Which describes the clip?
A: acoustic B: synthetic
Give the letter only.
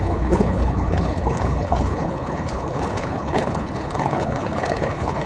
B